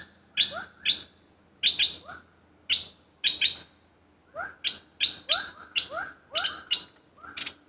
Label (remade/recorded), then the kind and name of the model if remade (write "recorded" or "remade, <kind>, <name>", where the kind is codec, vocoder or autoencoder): recorded